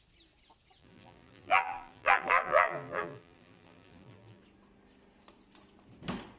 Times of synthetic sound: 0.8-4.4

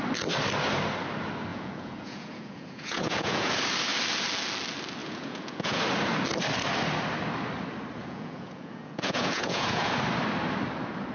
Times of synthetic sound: 1.5-3.5; 5.0-5.8; 8.0-9.9

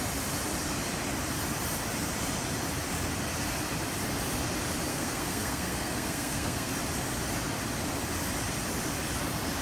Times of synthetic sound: 4.9-6.7

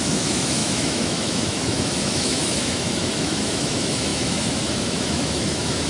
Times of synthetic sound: 0.0-5.9

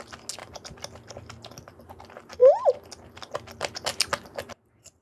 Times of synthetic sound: none

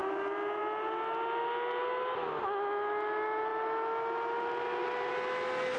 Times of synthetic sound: none

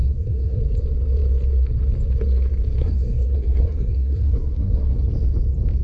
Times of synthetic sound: 0.0-0.6; 2.8-4.9

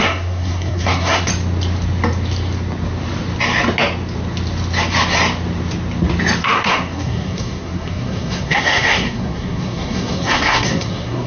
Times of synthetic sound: 0.0-1.3; 6.4-11.3